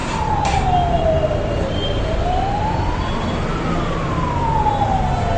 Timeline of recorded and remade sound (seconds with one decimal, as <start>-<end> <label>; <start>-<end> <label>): 0.0-5.4 recorded